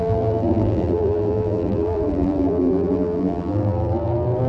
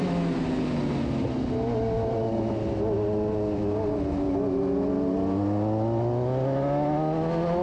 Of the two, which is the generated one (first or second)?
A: first